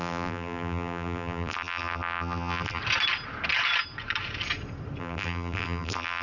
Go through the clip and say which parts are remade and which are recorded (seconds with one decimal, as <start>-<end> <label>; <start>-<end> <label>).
0.0-2.8 remade; 2.8-5.0 recorded; 5.0-6.2 remade